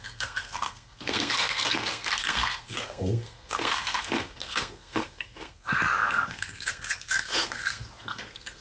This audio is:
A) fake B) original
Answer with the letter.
A